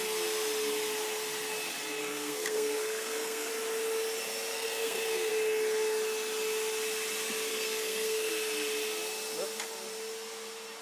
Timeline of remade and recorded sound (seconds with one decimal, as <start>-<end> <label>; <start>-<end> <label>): 0.0-2.0 recorded; 2.0-3.5 remade; 3.5-4.5 recorded; 4.5-5.3 remade; 5.3-7.5 recorded; 7.5-8.3 remade; 8.3-10.8 recorded

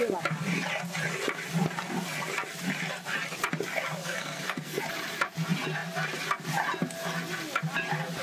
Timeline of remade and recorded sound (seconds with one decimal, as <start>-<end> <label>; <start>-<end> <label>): 0.0-4.0 recorded; 4.0-4.8 remade; 4.8-8.2 recorded

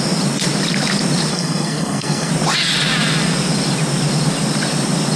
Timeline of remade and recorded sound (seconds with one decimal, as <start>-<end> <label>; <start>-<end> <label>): 0.0-1.3 recorded; 1.3-2.3 remade; 2.3-5.2 recorded

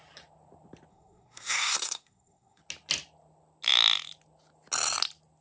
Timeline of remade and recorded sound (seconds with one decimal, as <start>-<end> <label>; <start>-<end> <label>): 0.0-0.9 recorded; 0.9-2.6 remade; 2.6-5.4 recorded

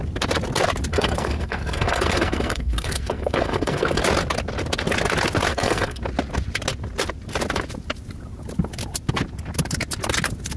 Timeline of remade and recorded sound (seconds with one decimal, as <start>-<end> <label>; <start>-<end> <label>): 0.0-0.9 recorded; 0.9-4.0 remade; 4.0-5.5 recorded; 5.5-6.0 remade; 6.0-10.6 recorded

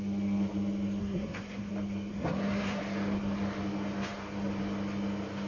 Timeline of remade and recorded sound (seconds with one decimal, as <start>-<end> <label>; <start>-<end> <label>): 0.0-1.0 recorded; 1.0-1.7 remade; 1.7-2.1 recorded; 2.1-2.8 remade; 2.8-5.5 recorded

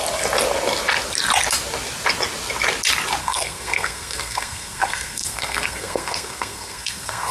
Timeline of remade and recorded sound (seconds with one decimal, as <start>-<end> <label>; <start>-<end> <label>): 0.0-3.2 recorded; 3.2-7.3 remade

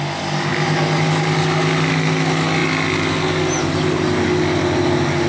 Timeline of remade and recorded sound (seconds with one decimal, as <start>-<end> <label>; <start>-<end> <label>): 0.0-5.3 recorded